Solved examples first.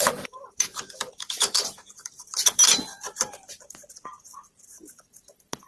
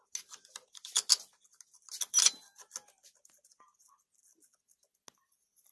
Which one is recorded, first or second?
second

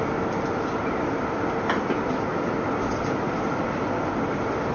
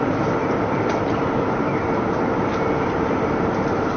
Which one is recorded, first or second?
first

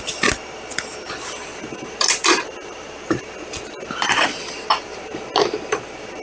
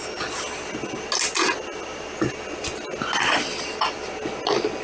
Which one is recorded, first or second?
second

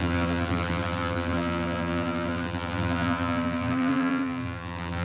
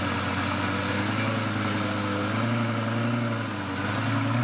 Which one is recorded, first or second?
second